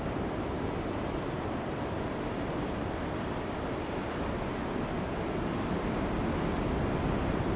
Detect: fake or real real